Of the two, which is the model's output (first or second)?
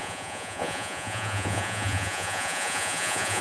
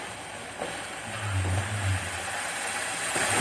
first